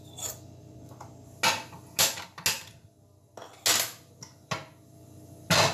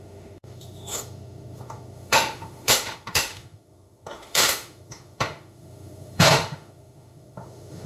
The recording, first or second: first